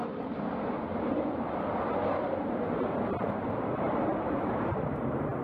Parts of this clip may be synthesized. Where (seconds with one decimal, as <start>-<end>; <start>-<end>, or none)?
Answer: 3.2-5.4